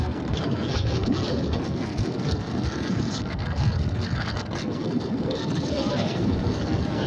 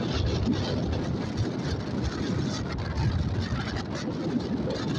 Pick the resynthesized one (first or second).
first